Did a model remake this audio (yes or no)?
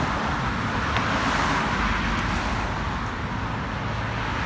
no